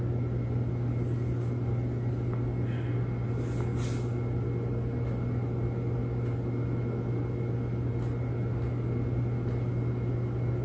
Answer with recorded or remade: recorded